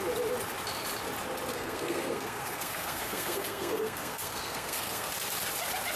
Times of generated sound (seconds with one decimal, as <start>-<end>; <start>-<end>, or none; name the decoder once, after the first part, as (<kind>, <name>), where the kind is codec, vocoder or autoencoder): 1.5-5.1 (codec, SNAC)